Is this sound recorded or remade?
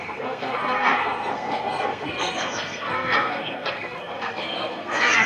remade